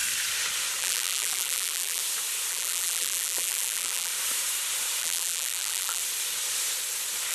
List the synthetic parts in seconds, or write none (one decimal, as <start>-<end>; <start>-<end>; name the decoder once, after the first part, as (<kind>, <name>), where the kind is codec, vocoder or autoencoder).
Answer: 0.8-2.0 (vocoder, BigVGAN v2); 2.5-4.1; 5.0-6.0